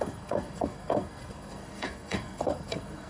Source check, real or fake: fake